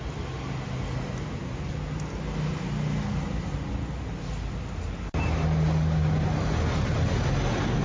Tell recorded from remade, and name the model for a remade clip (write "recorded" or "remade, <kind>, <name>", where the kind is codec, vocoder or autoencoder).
recorded